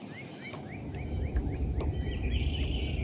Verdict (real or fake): real